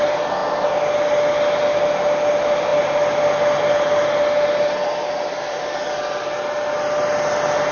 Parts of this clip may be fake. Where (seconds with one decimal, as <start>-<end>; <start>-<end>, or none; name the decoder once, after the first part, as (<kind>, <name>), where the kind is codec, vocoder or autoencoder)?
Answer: none